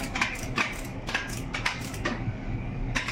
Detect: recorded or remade remade